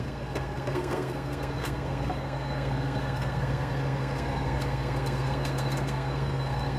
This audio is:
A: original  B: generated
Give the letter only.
B